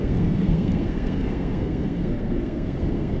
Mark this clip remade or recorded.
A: remade